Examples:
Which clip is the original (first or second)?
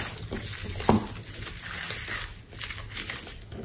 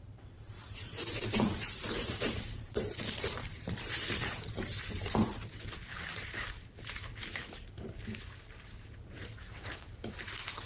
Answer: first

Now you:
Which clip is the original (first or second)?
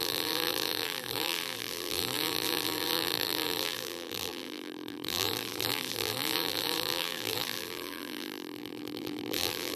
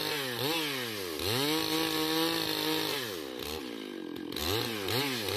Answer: second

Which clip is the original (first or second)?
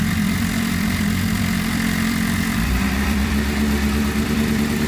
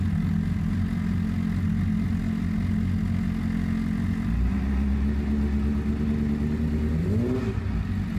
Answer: second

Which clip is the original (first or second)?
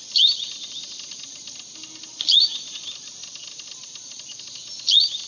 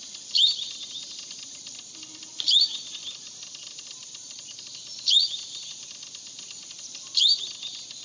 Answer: first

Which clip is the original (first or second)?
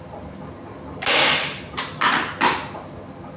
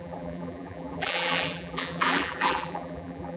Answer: first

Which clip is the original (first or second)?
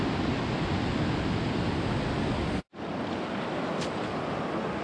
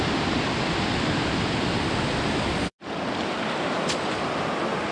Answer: first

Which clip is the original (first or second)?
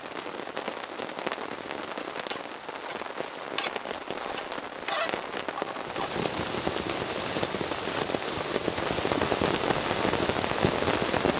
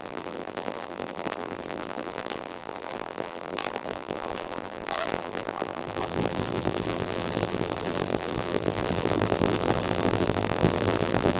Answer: first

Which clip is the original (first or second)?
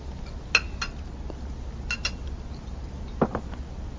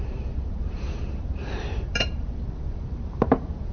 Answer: first